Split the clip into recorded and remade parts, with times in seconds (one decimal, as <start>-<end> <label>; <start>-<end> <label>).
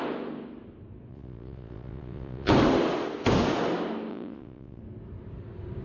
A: 0.0-1.1 recorded; 1.1-2.5 remade; 2.5-4.1 recorded; 4.1-4.8 remade; 4.8-5.8 recorded